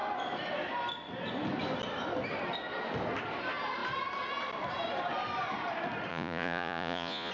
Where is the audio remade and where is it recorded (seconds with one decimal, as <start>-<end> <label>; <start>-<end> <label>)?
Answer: 0.0-6.1 recorded; 6.1-7.3 remade